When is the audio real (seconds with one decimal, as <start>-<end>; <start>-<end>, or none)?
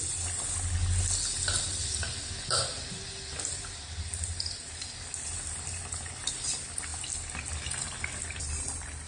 0.0-9.1